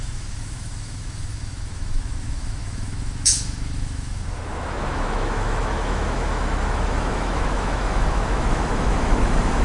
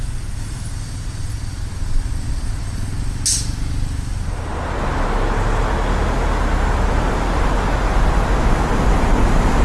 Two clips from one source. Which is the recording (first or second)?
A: second